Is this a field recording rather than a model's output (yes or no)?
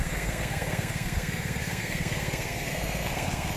no